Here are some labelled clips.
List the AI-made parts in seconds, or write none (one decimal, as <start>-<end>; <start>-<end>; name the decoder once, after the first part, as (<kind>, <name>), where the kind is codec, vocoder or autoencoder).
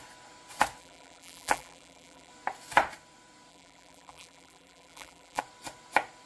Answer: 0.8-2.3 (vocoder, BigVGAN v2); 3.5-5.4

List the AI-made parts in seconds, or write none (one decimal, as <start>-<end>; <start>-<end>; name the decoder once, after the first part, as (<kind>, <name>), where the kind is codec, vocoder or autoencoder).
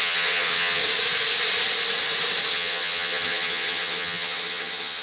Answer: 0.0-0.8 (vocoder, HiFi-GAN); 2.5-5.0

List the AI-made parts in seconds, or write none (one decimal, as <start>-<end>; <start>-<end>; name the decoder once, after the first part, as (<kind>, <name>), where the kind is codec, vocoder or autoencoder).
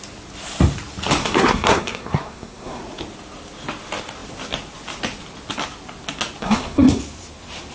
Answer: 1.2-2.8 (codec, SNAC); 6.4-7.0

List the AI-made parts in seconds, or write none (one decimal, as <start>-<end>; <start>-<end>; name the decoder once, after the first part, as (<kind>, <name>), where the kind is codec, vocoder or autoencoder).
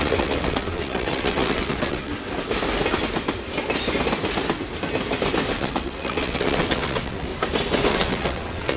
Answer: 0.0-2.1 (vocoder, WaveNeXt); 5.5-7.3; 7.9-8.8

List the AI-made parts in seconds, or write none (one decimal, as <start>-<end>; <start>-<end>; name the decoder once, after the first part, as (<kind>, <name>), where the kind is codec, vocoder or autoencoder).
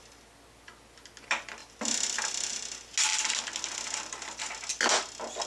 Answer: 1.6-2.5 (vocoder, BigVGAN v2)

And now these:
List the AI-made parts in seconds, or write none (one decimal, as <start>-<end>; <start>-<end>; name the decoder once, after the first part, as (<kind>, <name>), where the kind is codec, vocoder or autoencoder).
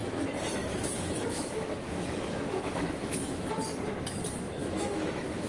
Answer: 0.6-3.5 (autoencoder, DAC-VAE); 4.6-5.5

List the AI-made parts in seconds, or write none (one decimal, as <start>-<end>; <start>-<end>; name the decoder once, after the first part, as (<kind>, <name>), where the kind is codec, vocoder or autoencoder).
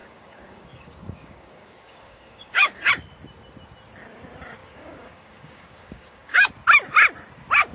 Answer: 0.0-2.9 (codec, DAC); 4.6-6.5